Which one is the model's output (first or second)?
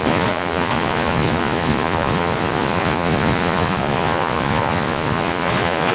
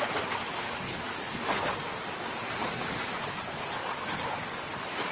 first